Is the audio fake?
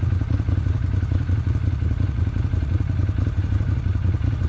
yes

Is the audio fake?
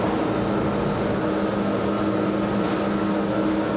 no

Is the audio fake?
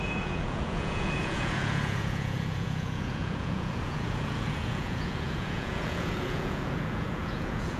yes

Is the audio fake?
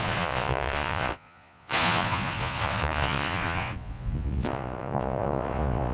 yes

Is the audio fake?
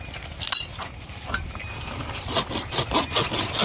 no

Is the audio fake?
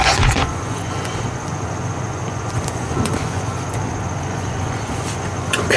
yes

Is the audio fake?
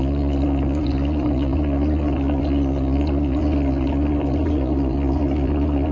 yes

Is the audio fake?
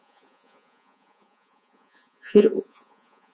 yes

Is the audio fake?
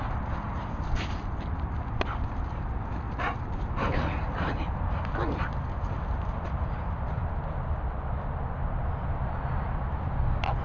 no